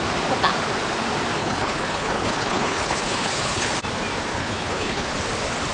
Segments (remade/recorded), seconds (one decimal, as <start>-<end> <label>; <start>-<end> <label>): 0.0-1.4 recorded; 1.4-3.7 remade; 3.7-4.3 recorded; 4.3-5.1 remade; 5.1-5.7 recorded